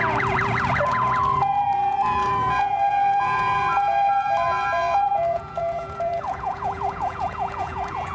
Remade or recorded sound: remade